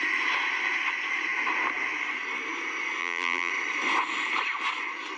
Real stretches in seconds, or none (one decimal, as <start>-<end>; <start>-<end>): 0.0-3.0; 3.5-5.2